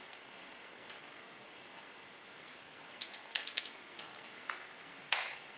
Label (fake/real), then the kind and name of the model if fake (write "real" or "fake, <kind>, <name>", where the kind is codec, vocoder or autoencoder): fake, codec, SNAC